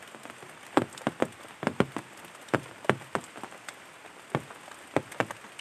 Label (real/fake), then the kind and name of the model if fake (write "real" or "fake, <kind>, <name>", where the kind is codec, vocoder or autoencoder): real